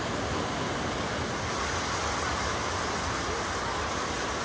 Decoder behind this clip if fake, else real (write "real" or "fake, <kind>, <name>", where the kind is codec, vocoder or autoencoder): real